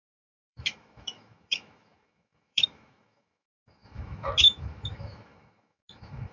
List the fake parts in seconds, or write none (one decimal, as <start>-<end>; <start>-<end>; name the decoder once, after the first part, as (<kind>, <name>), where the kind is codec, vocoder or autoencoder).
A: 0.0-6.3 (autoencoder, DAC-VAE)